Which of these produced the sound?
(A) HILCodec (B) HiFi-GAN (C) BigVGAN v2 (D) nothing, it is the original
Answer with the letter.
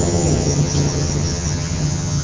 B